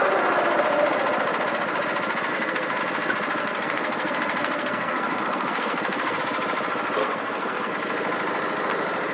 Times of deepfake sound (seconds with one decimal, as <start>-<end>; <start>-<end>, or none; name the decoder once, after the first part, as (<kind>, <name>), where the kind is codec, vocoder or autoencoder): 2.3-2.8 (codec, SNAC); 3.4-6.2; 7.0-7.7